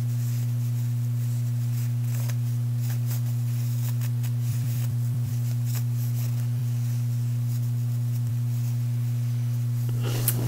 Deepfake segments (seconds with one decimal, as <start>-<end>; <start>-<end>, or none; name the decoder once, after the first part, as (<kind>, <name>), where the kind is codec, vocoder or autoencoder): 4.5-5.3 (vocoder, BigVGAN v2)